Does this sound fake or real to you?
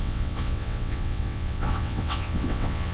fake